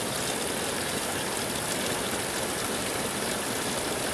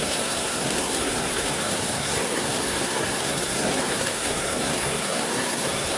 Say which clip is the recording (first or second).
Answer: first